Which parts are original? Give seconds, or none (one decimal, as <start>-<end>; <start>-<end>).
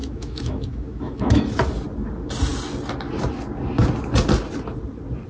1.4-5.3